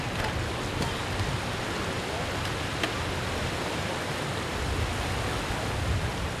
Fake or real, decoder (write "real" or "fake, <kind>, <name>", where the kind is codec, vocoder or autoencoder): real